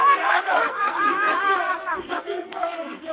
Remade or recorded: remade